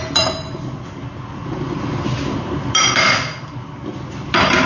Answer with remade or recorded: recorded